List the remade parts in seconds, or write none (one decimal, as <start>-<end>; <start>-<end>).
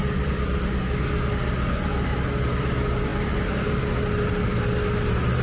none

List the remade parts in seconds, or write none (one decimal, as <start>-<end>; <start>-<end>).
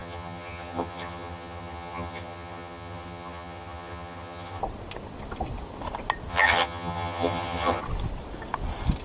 0.0-4.6; 6.3-7.8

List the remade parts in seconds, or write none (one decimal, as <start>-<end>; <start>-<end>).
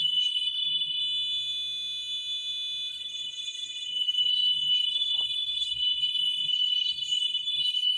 0.0-1.0; 2.9-8.0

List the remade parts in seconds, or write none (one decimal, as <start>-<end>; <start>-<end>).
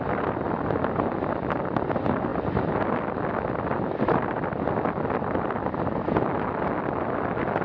none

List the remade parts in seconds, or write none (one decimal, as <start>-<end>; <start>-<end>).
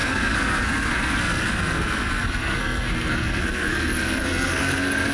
0.0-5.1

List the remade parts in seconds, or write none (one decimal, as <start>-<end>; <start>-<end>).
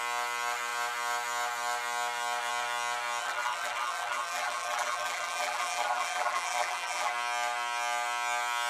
3.2-7.1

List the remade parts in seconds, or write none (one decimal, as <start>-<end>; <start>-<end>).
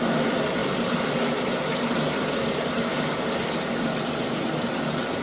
0.6-1.5